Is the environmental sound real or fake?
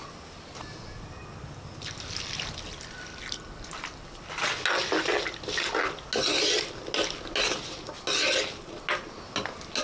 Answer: real